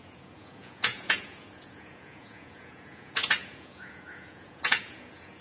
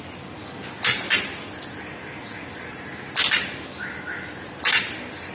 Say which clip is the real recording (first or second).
second